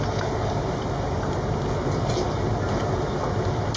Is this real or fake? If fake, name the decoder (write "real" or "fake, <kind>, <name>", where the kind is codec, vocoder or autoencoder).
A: real